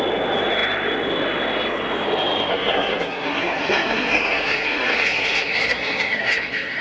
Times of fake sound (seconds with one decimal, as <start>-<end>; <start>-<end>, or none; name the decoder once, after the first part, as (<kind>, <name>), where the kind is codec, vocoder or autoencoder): 2.5-6.8 (codec, SNAC)